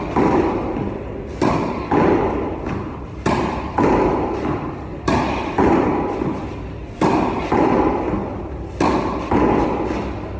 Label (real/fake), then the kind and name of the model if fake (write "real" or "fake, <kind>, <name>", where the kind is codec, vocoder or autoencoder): real